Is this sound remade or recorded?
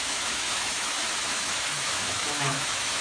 remade